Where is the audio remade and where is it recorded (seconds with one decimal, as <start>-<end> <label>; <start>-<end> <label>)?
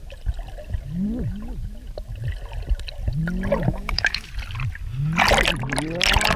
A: 0.0-3.7 recorded; 3.7-4.3 remade; 4.3-6.4 recorded